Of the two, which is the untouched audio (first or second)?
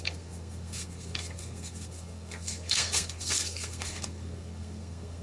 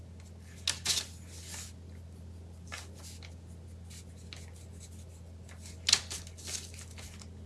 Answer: second